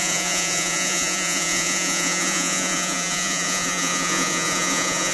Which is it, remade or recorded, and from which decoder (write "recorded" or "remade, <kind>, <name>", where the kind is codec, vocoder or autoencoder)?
remade, vocoder, Vocos